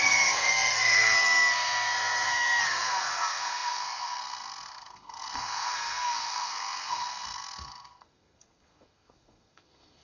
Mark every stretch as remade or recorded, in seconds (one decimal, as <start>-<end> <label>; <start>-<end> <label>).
0.0-10.0 remade